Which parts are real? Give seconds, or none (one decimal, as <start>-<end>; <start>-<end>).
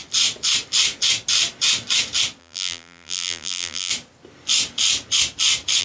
0.0-2.4; 3.9-5.8